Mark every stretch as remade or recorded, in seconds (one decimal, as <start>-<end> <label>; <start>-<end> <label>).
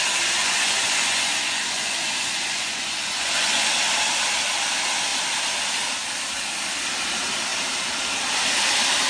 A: 0.0-0.4 recorded; 0.4-3.7 remade; 3.7-9.1 recorded